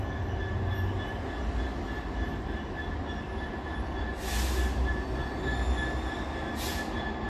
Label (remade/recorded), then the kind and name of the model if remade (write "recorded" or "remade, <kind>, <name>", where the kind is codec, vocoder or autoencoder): recorded